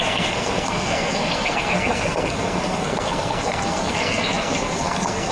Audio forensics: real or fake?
fake